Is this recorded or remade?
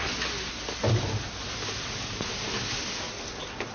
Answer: recorded